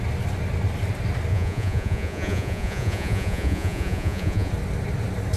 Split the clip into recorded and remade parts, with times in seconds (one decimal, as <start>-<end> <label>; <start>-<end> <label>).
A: 0.0-1.3 recorded; 1.3-4.5 remade; 4.5-5.4 recorded